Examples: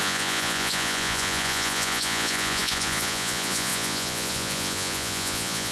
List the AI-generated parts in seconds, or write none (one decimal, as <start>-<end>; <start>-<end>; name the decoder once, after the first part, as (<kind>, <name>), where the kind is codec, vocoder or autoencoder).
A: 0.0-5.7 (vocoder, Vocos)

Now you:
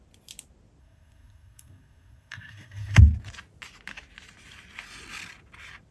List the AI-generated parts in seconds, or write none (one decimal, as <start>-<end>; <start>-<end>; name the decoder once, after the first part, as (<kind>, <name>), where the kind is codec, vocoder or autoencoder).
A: 0.8-3.0 (codec, SNAC)

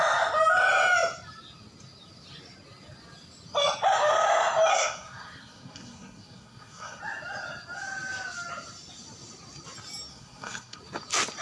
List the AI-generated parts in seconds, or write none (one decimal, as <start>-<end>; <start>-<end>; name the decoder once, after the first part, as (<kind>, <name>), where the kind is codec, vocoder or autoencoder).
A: 4.7-7.0 (codec, SNAC); 10.1-10.8

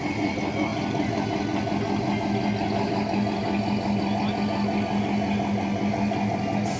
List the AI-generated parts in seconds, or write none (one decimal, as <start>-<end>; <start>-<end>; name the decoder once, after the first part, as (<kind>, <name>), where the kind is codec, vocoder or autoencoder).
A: none

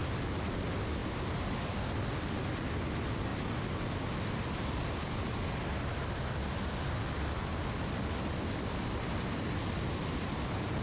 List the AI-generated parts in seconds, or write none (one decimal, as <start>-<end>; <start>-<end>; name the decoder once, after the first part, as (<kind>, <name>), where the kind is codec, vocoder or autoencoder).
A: 0.0-3.3 (vocoder, BigVGAN v2); 4.7-10.8

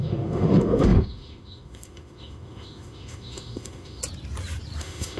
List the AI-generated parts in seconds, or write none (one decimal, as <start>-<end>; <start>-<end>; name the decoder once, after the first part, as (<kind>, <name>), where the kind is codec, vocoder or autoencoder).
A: 0.0-4.0 (autoencoder, DAC-VAE); 4.8-5.2

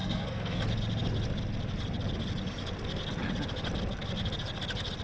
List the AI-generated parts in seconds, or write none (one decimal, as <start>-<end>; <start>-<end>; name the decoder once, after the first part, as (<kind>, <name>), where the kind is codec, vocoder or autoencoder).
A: 0.0-0.6 (codec, SNAC)

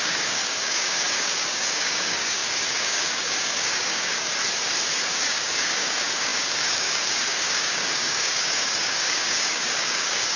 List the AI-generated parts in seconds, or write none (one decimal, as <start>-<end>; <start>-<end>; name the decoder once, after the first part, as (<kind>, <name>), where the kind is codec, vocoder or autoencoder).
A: 0.0-4.3 (codec, DAC); 5.1-10.4